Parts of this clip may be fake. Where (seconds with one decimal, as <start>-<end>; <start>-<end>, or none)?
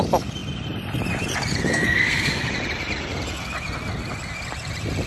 1.7-2.3